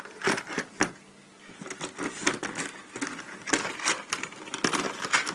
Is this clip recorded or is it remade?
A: recorded